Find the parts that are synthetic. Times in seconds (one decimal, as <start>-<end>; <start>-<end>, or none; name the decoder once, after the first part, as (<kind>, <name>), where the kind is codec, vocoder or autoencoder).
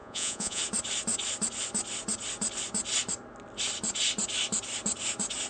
0.0-0.6 (vocoder, Vocos)